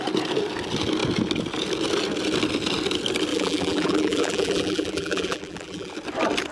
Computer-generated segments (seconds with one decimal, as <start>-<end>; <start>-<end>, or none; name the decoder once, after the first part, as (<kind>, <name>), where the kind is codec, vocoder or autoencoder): 3.3-5.9 (vocoder, BigVGAN v2)